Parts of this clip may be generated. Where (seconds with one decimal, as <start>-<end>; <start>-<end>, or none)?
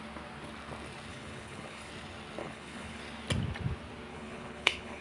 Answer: 1.1-1.9; 2.4-3.0; 4.1-5.0